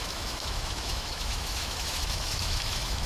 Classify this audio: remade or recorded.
remade